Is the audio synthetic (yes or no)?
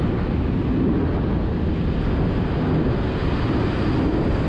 no